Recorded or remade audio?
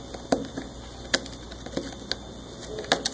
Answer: recorded